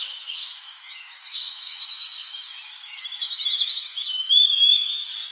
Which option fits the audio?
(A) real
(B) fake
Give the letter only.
B